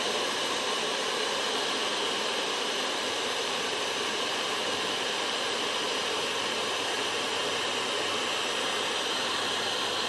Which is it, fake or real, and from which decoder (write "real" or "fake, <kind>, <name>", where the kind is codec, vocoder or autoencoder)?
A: fake, vocoder, BigVGAN v2